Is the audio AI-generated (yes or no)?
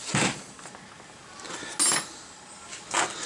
no